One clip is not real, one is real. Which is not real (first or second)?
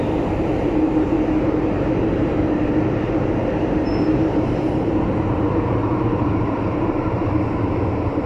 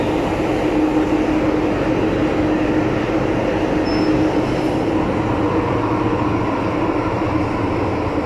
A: first